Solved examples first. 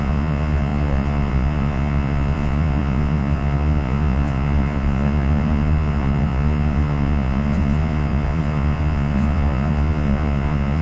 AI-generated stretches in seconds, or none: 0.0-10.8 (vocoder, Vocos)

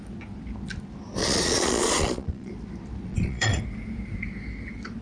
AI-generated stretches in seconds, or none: 1.2-2.5 (vocoder, Vocos); 3.1-3.6

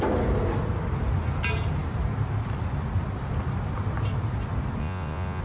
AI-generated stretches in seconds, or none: 4.8-5.4 (vocoder, Vocos)

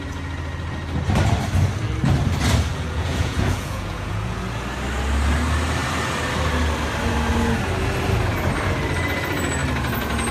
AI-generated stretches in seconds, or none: 2.7-4.4 (vocoder, Vocos)

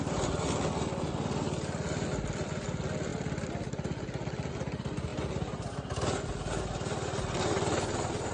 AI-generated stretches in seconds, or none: none

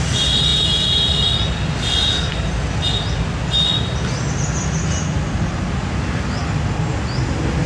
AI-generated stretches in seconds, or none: 0.5-1.1 (vocoder, Vocos)

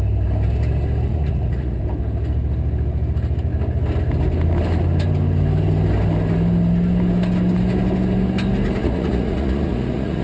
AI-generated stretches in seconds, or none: 1.1-1.8 (vocoder, Vocos); 8.8-10.2